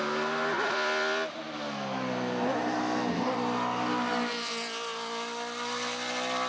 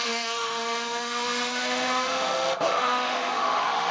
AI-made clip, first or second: second